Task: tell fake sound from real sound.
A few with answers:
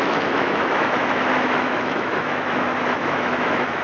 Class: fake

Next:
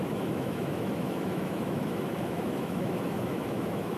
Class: fake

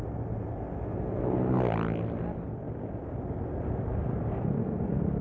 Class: real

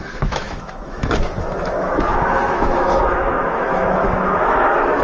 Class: fake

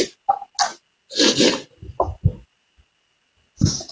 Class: real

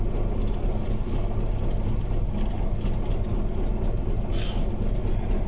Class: real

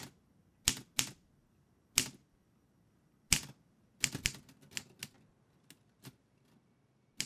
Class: real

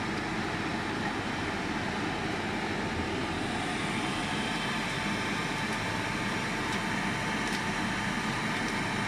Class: real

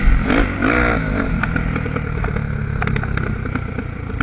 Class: real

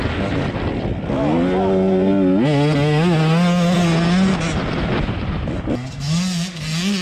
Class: real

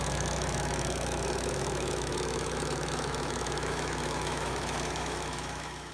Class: fake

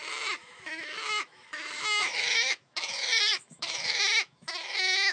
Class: fake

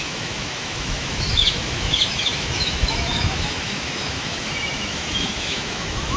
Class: fake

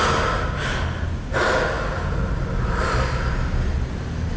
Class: real